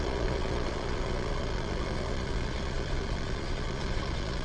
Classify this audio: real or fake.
fake